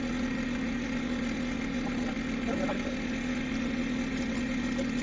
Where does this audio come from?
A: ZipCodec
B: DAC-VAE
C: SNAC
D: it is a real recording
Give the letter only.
D